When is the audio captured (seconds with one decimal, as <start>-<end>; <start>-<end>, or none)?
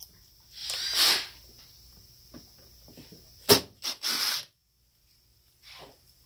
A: 0.0-6.3